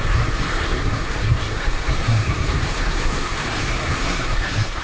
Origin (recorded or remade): remade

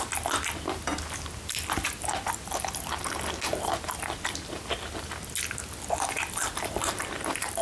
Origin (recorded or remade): recorded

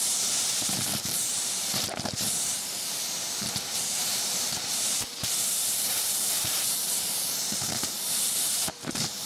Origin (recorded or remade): remade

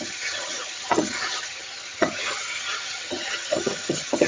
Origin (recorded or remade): remade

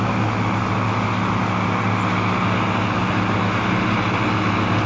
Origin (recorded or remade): recorded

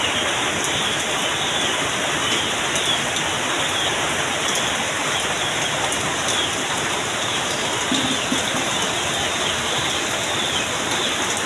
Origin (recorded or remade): recorded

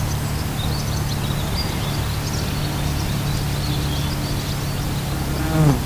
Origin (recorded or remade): recorded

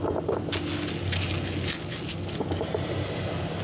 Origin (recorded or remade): recorded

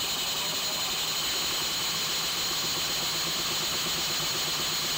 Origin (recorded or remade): recorded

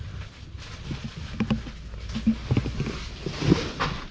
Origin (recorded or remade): recorded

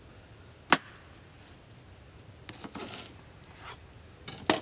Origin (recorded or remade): recorded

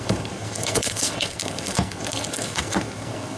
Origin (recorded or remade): remade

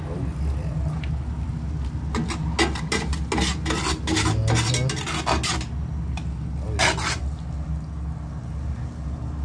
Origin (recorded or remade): recorded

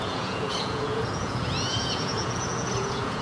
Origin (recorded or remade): remade